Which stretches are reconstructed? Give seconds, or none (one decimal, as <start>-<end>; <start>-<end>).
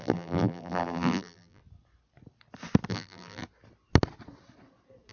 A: 0.0-1.6; 2.9-3.4